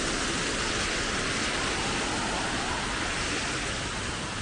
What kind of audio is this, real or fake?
real